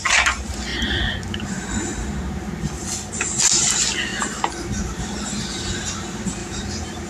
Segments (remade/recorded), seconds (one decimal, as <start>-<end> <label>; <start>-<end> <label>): 0.0-6.4 recorded; 6.4-7.1 remade